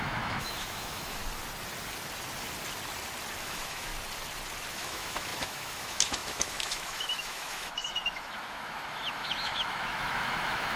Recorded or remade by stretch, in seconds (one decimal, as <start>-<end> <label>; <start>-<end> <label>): 0.0-1.2 remade; 1.2-3.4 recorded; 3.4-3.9 remade; 3.9-4.7 recorded; 4.7-10.8 remade